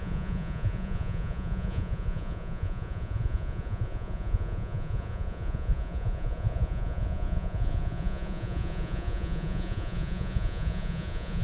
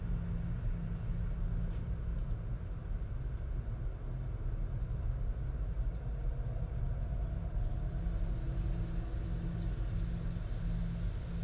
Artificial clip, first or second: first